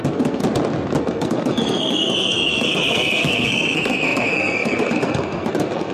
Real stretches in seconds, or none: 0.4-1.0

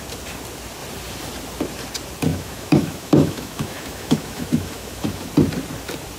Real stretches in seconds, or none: 0.0-2.3; 5.3-6.2

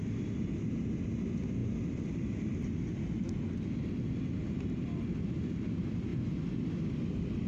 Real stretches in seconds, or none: 0.0-7.5

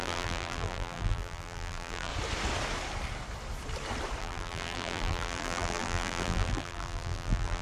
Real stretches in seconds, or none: 2.1-4.2